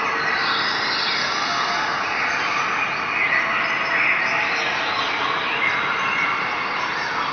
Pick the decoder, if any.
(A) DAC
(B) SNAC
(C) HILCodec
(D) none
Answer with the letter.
D